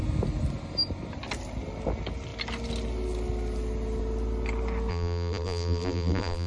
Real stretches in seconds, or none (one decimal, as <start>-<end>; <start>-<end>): 0.0-4.9